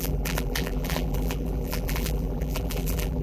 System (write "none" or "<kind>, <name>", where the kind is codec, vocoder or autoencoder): vocoder, BigVGAN v2